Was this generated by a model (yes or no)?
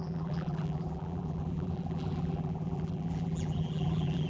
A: yes